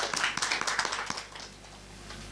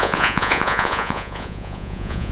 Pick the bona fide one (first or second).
first